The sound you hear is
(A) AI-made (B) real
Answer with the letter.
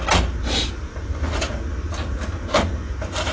B